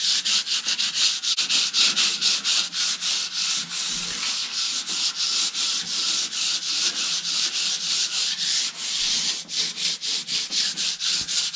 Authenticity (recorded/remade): recorded